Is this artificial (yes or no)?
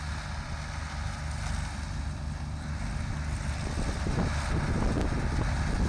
no